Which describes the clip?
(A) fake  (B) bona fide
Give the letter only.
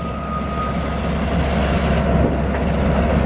B